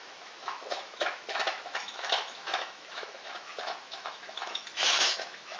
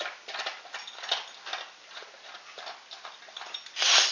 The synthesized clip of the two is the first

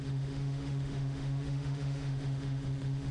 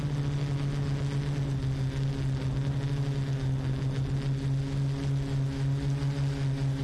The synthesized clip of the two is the first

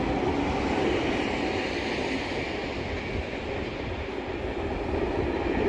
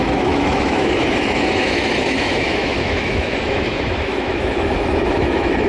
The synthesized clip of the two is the second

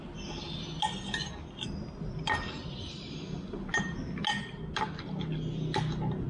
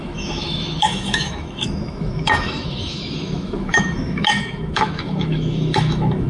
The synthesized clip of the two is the second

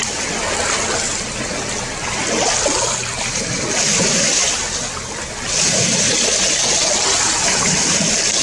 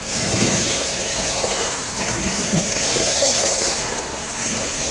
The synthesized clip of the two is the second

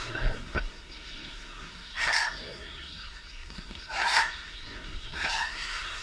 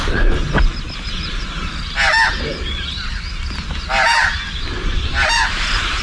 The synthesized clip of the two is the first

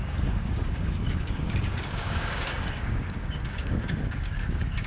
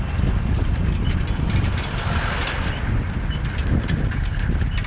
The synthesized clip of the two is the first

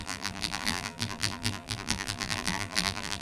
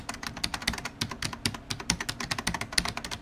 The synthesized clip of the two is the first